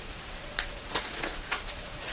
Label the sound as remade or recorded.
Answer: remade